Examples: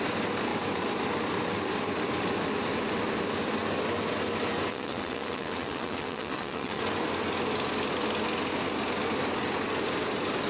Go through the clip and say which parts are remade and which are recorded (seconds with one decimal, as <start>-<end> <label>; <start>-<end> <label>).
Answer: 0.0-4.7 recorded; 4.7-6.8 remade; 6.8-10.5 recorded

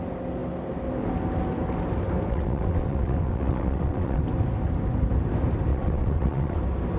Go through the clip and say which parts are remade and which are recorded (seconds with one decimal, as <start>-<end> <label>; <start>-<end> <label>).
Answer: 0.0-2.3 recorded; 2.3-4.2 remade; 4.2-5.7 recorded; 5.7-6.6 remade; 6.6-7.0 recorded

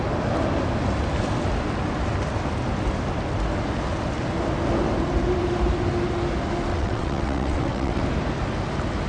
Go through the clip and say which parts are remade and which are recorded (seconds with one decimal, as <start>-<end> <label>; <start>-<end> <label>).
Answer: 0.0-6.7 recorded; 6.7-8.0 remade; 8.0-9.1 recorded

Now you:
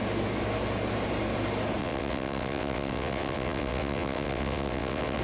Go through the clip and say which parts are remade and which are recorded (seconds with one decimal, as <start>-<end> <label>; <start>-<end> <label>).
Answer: 0.0-1.8 recorded; 1.8-5.2 remade

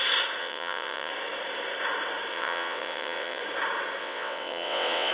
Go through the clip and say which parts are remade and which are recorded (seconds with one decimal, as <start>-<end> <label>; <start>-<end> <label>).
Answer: 0.0-0.4 recorded; 0.4-1.1 remade; 1.1-2.3 recorded; 2.3-3.4 remade; 3.4-4.0 recorded; 4.0-5.1 remade

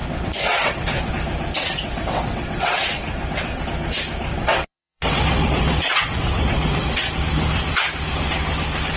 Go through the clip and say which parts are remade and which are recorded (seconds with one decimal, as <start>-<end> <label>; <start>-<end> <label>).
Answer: 0.0-1.1 remade; 1.1-1.6 recorded; 1.6-3.6 remade; 3.6-4.3 recorded; 4.3-7.1 remade; 7.1-9.0 recorded

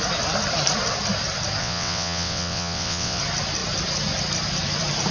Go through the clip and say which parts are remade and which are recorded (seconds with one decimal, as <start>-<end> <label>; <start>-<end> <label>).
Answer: 0.0-1.6 recorded; 1.6-3.2 remade; 3.2-5.1 recorded

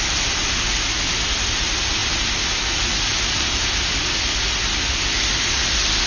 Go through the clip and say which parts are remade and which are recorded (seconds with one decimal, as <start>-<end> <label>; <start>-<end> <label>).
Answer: 0.0-6.1 recorded